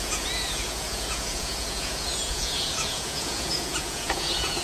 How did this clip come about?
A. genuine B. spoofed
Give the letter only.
B